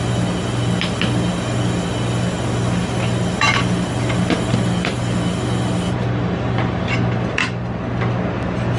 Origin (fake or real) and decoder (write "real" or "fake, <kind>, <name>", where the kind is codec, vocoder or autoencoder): real